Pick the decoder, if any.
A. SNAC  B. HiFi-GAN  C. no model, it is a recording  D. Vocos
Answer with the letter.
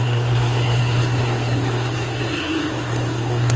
A